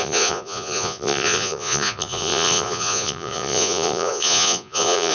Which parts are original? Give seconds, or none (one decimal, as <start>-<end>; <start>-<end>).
none